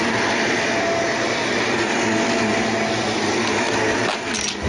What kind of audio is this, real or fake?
real